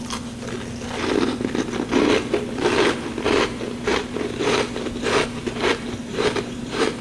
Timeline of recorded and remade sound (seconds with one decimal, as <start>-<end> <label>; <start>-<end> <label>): 0.0-4.0 recorded; 4.0-4.5 remade; 4.5-6.1 recorded; 6.1-7.0 remade